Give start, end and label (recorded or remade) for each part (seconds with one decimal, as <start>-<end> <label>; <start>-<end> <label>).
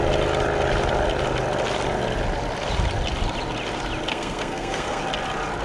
0.0-4.1 recorded; 4.1-5.0 remade; 5.0-5.6 recorded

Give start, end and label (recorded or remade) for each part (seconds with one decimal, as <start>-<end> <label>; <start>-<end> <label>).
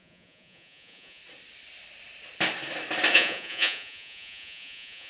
0.0-1.2 remade; 1.2-3.1 recorded; 3.1-5.1 remade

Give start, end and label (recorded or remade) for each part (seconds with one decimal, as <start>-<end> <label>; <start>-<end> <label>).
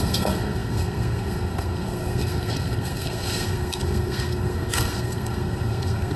0.0-6.2 remade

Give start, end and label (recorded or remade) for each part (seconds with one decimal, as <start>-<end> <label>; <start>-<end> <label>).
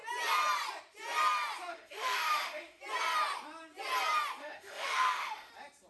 0.0-1.7 recorded; 1.7-2.8 remade; 2.8-4.4 recorded; 4.4-5.5 remade; 5.5-5.9 recorded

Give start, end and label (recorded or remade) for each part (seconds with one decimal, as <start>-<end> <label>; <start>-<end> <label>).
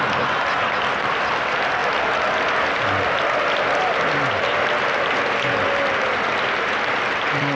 0.0-1.8 remade; 1.8-5.9 recorded; 5.9-7.5 remade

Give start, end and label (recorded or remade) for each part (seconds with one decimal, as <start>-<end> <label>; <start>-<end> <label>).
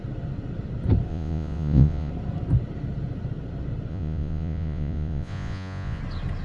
0.0-1.1 recorded; 1.1-2.1 remade; 2.1-3.9 recorded; 3.9-6.0 remade; 6.0-6.4 recorded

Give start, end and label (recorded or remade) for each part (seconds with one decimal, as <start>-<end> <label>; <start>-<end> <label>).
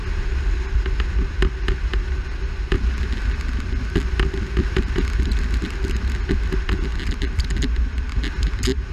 0.0-8.9 recorded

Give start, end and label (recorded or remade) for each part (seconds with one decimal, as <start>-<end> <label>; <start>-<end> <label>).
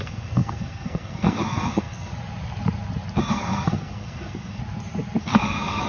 0.0-2.1 remade; 2.1-3.2 recorded; 3.2-4.6 remade; 4.6-5.2 recorded; 5.2-5.9 remade